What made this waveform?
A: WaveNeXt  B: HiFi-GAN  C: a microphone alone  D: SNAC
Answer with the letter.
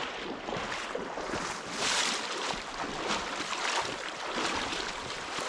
C